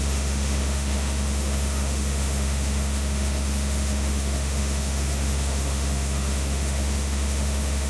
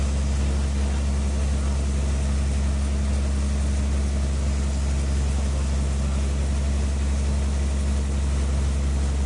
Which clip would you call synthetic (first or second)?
first